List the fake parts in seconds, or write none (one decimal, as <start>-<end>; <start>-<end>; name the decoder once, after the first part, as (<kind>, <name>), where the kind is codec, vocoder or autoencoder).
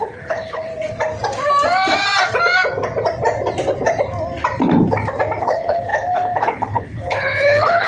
0.0-0.7 (codec, HILCodec); 5.4-7.9